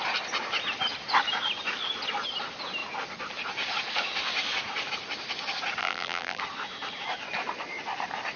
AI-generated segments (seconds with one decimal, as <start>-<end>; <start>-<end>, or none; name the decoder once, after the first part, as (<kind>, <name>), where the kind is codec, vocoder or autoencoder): 5.8-6.4 (vocoder, BigVGAN v2)